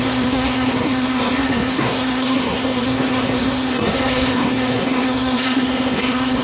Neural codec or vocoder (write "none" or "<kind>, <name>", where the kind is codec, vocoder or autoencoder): codec, SNAC